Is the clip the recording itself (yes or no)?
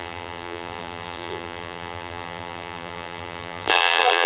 no